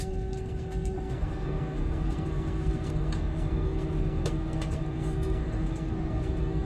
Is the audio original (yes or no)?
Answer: no